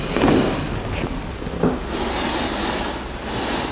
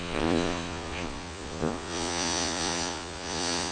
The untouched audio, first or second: first